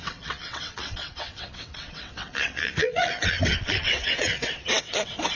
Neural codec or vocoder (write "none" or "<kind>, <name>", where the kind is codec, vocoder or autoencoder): vocoder, WaveNeXt